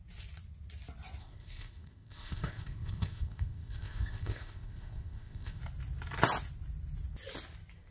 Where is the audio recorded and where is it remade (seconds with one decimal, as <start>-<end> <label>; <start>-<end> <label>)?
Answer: 0.0-1.2 recorded; 1.2-5.6 remade; 5.6-7.9 recorded